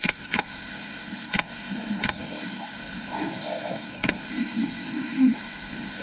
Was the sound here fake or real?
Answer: fake